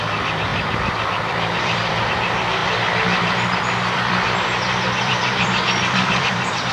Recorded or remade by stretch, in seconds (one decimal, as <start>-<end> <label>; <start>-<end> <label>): 0.0-0.5 recorded; 0.5-2.1 remade; 2.1-2.6 recorded; 2.6-6.7 remade